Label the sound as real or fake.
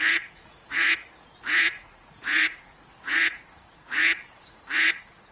fake